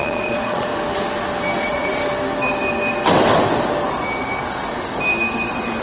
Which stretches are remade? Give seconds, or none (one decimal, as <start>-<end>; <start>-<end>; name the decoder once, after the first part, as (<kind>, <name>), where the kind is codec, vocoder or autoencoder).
0.0-0.7 (vocoder, Vocos); 1.6-2.0